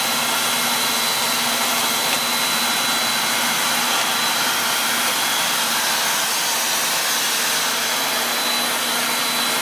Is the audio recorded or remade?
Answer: recorded